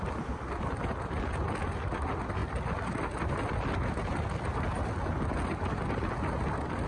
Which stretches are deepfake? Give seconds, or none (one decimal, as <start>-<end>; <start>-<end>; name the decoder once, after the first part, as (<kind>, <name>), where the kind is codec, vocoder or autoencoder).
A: 2.4-3.5 (vocoder, BigVGAN v2)